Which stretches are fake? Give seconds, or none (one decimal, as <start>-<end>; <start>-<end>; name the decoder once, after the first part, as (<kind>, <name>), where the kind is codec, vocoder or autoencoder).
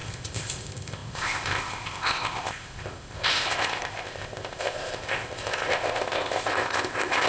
0.0-7.3 (codec, ZipCodec)